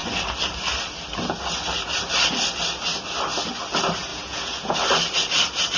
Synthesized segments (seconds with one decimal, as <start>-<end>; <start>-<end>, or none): 4.1-4.7